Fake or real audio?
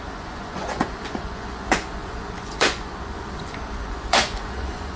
fake